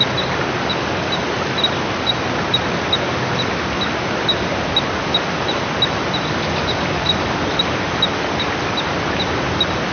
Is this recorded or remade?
recorded